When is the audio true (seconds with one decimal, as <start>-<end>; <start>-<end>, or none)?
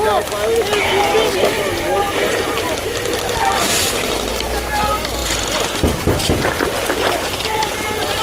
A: 0.0-8.2